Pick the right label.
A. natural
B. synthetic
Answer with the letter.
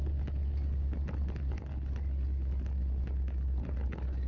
A